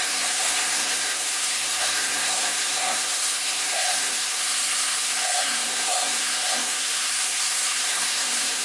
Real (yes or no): no